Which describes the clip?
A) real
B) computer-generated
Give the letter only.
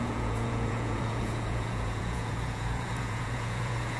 B